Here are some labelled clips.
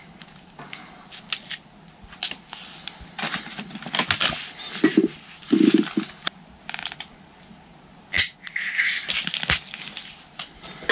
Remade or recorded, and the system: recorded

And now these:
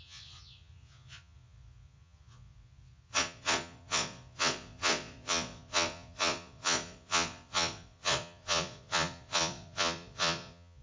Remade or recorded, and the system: remade, vocoder, Vocos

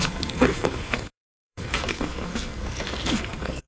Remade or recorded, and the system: remade, codec, SNAC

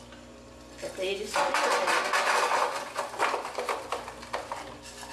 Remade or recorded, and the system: recorded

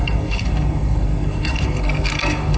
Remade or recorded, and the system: remade, codec, SNAC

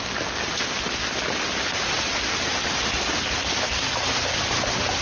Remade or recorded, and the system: recorded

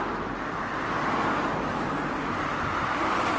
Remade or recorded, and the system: recorded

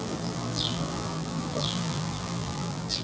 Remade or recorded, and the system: remade, vocoder, BigVGAN v2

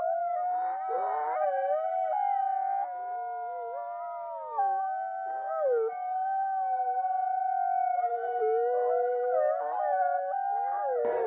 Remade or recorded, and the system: recorded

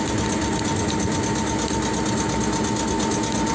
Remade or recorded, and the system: recorded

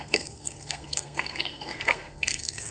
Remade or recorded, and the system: remade, codec, SNAC